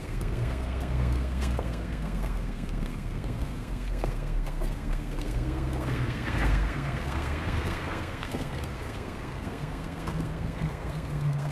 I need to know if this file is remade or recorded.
remade